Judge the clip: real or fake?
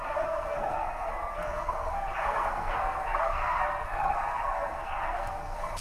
fake